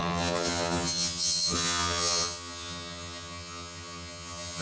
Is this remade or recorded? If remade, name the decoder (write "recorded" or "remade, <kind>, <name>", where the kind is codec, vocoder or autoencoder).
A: remade, vocoder, HiFi-GAN